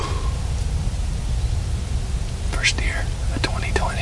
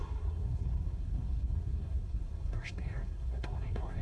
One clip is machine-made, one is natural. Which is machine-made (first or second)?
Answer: second